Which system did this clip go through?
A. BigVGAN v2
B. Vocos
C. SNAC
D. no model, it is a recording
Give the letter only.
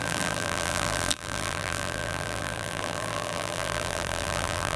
A